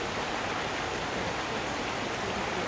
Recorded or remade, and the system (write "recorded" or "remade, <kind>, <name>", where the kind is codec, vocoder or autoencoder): recorded